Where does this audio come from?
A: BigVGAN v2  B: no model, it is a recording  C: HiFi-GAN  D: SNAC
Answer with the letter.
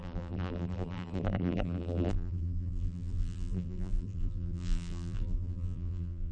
A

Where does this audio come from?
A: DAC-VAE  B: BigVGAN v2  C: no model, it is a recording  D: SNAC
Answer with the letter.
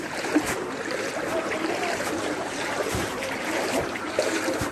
B